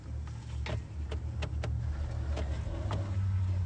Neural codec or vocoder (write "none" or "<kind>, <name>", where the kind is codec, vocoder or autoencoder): none